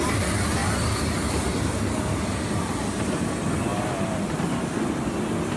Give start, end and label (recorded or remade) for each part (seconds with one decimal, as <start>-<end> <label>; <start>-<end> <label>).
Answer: 0.0-5.6 recorded